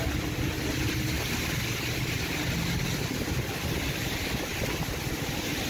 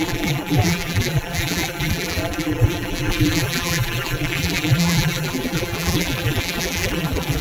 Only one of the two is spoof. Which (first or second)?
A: second